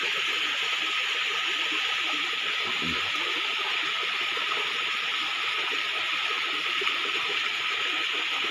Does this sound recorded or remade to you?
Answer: recorded